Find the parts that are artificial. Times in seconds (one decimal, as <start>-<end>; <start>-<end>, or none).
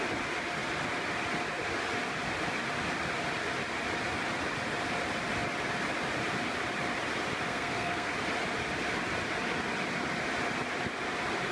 7.5-8.1